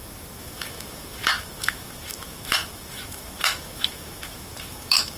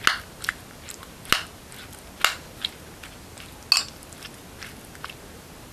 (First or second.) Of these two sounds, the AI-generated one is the first